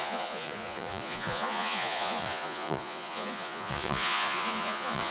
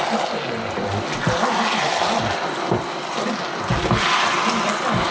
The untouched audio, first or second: second